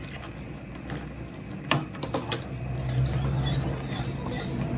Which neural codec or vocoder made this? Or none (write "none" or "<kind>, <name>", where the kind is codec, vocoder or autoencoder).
none